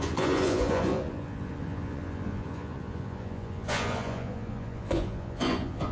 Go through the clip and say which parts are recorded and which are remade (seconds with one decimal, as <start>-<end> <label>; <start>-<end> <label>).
0.0-5.9 remade